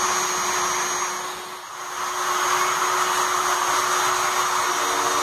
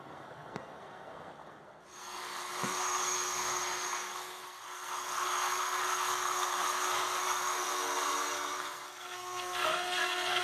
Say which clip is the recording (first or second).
first